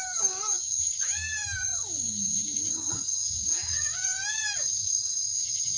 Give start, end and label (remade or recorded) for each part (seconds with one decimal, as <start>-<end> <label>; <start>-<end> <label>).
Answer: 0.0-5.8 remade